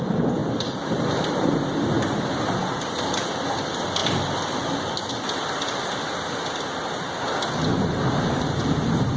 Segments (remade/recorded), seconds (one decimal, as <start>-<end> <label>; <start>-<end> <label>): 0.0-0.4 recorded; 0.4-1.3 remade; 1.3-9.2 recorded